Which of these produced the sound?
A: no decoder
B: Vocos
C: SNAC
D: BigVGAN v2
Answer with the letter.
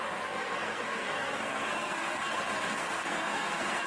C